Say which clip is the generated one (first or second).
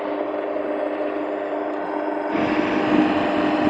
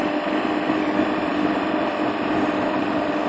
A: second